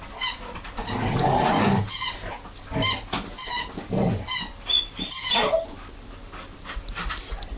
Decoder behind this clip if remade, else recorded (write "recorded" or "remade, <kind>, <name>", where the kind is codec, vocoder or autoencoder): recorded